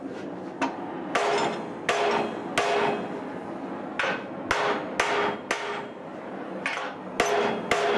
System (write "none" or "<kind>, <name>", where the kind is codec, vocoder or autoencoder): none